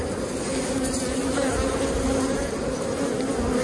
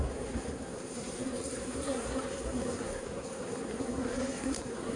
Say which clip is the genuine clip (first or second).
first